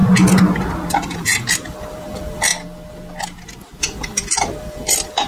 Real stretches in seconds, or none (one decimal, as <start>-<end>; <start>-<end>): 0.0-0.9; 2.5-3.8